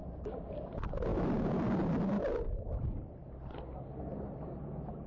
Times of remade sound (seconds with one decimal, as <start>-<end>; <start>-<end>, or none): 1.1-2.2